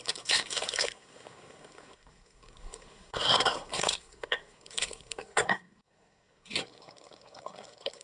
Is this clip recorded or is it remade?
remade